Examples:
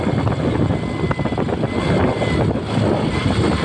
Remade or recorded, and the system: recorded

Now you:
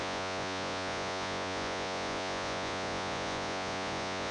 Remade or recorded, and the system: remade, vocoder, Vocos